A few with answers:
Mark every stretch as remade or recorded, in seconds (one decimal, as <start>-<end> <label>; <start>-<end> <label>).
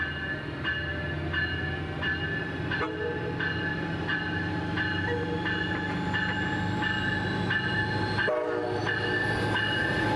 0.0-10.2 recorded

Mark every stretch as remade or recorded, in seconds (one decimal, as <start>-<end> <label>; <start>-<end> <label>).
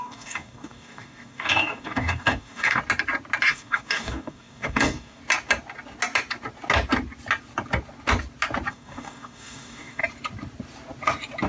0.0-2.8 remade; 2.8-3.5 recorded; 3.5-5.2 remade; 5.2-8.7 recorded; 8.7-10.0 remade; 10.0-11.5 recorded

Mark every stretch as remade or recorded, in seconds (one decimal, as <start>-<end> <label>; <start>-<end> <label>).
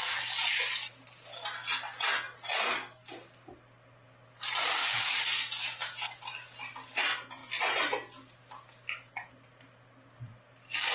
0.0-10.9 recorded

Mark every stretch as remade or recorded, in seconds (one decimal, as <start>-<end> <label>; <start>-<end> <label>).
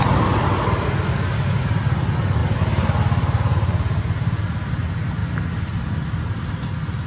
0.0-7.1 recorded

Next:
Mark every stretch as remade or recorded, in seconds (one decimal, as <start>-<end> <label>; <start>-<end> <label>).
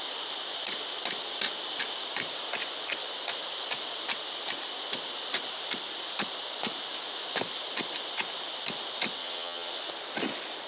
0.0-9.2 recorded; 9.2-9.7 remade; 9.7-10.7 recorded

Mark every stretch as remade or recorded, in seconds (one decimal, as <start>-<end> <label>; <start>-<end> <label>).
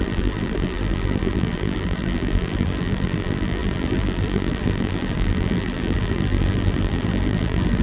0.0-7.8 remade